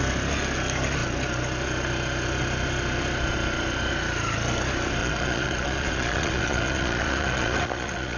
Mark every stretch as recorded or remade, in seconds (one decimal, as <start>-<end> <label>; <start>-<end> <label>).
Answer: 0.0-5.0 recorded; 5.0-8.2 remade